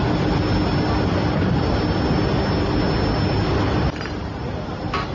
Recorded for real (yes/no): yes